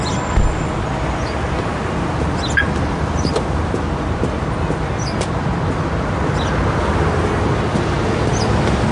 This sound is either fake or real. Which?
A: real